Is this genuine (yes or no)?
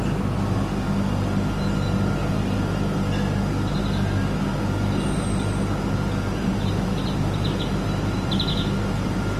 yes